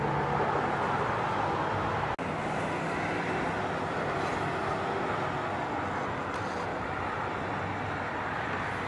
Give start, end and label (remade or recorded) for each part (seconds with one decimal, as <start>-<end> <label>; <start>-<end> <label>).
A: 0.0-8.9 recorded